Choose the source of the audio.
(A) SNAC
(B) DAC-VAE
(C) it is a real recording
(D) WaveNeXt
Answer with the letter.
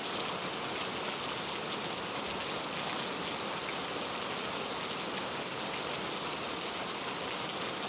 C